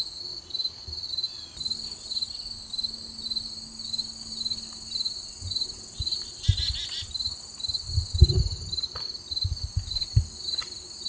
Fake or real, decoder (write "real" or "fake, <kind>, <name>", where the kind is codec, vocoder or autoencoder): real